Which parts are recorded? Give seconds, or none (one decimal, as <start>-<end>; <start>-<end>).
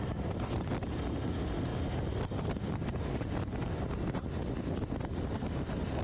0.0-6.0